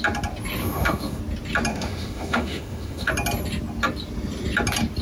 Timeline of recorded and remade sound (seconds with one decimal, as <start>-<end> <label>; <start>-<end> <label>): 0.0-0.6 recorded; 0.6-1.2 remade; 1.2-1.7 recorded; 1.7-3.1 remade; 3.1-5.0 recorded